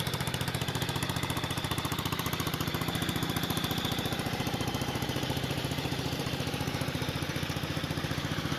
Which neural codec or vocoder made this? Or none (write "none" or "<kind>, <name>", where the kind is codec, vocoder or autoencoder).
vocoder, BigVGAN v2